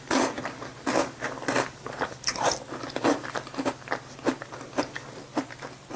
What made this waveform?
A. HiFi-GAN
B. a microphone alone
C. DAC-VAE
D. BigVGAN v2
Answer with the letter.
B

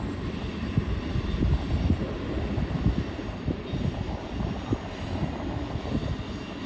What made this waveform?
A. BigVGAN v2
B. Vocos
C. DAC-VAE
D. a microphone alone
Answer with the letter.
D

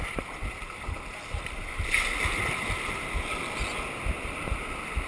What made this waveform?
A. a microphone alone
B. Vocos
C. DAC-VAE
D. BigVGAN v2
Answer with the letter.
A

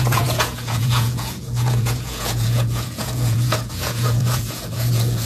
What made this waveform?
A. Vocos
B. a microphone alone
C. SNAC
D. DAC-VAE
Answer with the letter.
A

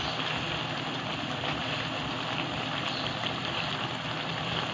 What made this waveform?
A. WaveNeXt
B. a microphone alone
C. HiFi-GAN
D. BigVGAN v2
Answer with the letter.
B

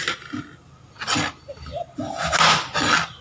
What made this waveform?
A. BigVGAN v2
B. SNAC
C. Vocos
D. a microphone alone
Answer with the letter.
D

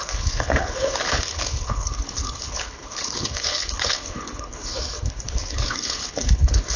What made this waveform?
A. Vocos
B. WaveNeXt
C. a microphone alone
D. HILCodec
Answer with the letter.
D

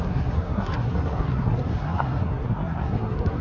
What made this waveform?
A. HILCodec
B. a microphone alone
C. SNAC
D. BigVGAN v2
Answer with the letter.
C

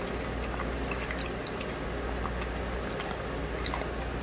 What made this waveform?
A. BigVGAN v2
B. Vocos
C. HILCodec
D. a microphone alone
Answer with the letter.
D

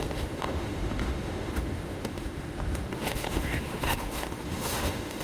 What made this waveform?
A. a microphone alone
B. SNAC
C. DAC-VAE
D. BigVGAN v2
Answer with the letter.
C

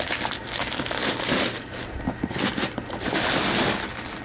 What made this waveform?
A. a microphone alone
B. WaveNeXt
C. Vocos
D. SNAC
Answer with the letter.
A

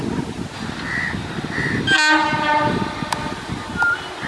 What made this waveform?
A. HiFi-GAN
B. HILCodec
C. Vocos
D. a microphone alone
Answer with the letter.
D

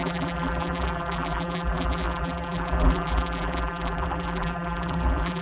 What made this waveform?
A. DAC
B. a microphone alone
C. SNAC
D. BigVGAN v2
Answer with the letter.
D